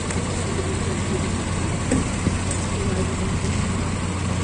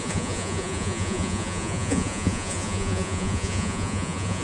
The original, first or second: first